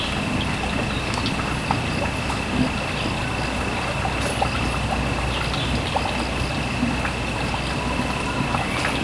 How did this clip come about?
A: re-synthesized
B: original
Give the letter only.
B